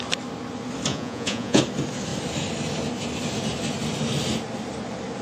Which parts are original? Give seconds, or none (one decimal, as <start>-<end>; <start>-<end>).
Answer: 0.0-0.9; 1.6-5.2